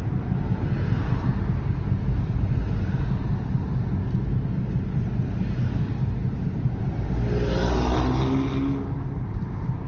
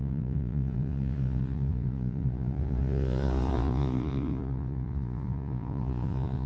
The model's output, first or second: second